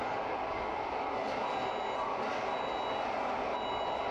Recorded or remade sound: recorded